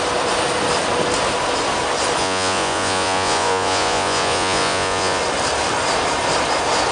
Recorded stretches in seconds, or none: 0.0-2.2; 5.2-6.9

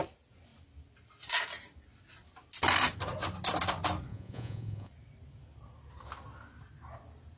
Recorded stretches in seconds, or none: 0.0-4.1; 4.9-7.4

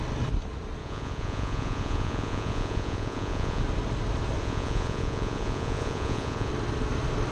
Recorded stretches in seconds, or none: 0.0-0.8; 3.6-4.4; 6.5-7.3

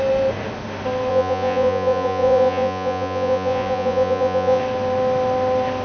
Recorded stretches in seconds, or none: 0.0-1.1; 4.6-5.8

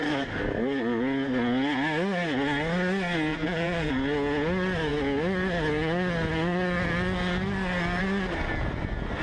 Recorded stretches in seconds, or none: 0.0-3.3; 3.9-9.2